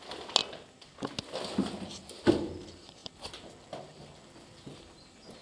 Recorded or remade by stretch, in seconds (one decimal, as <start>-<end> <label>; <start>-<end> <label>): 0.0-5.4 recorded